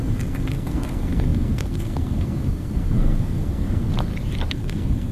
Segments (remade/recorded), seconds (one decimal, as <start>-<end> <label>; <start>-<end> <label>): 0.0-3.9 remade; 3.9-4.5 recorded; 4.5-5.1 remade